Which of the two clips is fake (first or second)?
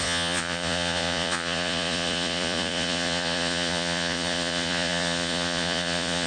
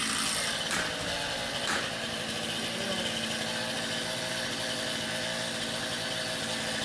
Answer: first